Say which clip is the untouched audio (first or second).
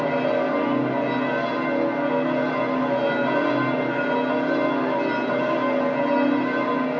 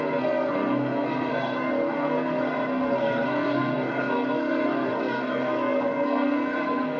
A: first